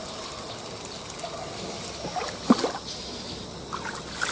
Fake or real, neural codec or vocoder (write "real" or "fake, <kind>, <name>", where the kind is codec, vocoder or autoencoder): real